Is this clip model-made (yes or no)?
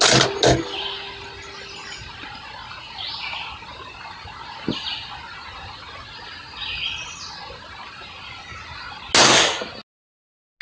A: no